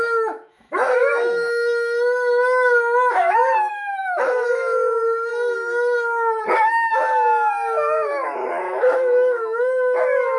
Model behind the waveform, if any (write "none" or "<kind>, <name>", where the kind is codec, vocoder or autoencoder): autoencoder, DAC-VAE